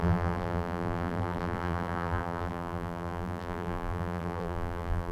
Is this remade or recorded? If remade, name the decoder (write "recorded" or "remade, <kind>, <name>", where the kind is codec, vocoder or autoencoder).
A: remade, vocoder, BigVGAN v2